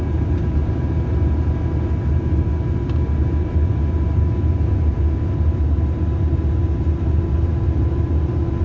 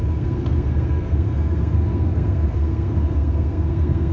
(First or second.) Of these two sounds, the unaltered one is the first